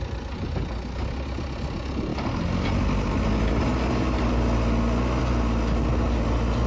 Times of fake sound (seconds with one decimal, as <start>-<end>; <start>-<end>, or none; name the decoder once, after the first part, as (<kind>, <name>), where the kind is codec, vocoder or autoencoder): none